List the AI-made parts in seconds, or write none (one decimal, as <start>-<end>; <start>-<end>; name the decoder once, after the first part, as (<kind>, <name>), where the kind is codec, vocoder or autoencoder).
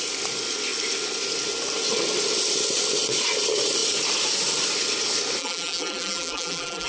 5.4-6.9 (vocoder, BigVGAN v2)